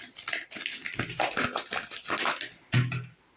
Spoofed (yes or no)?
no